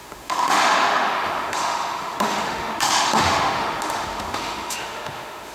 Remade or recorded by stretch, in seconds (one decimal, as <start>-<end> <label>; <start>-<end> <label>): 0.0-5.5 remade